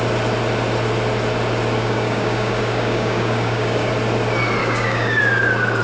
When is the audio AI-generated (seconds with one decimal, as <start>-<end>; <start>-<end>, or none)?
1.8-3.9; 4.6-5.2

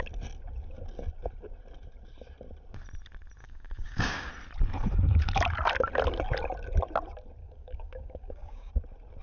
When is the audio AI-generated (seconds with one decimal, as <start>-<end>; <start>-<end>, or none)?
3.4-4.3; 7.4-8.7